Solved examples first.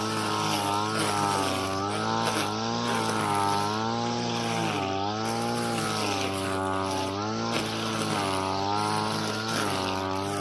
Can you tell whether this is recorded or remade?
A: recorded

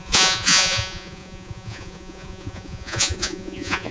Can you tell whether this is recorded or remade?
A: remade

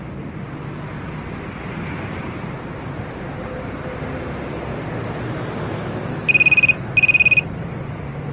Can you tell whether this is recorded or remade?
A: recorded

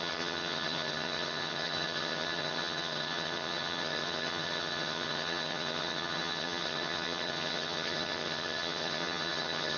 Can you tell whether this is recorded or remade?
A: remade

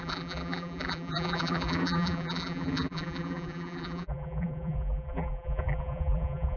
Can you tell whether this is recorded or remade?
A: remade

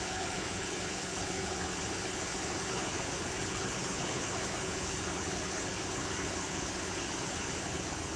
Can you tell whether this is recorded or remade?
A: remade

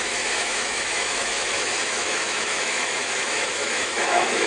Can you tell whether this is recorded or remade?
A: remade